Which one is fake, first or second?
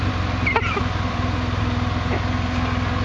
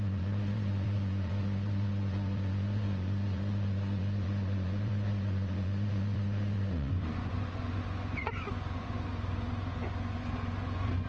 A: second